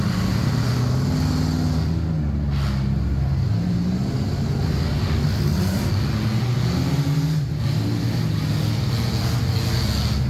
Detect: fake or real real